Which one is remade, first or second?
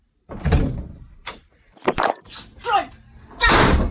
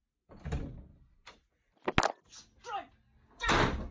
first